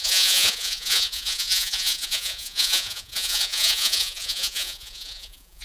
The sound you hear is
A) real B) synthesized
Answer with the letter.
B